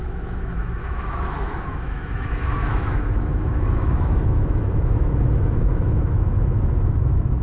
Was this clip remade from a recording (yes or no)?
yes